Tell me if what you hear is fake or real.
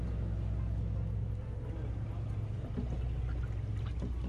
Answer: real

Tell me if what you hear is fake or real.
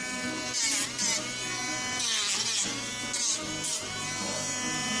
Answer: real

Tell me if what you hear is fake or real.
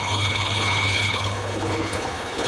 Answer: fake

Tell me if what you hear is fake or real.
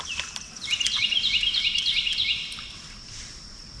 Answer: real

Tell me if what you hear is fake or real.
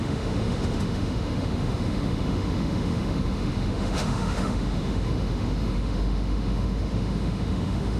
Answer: fake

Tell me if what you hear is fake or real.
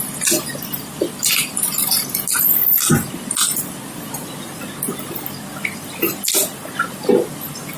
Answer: real